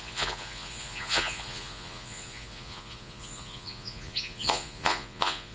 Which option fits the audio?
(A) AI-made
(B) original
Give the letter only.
A